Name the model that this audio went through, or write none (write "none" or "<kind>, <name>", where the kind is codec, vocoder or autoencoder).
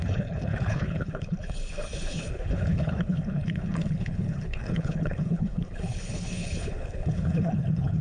codec, HILCodec